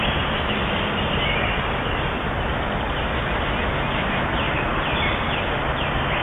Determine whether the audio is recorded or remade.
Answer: recorded